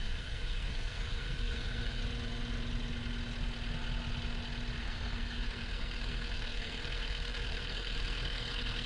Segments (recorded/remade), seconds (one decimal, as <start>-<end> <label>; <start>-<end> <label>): 0.0-2.0 remade; 2.0-4.8 recorded; 4.8-8.9 remade